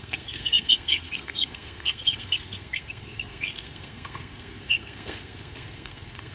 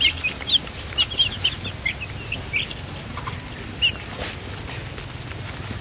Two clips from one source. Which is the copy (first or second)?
first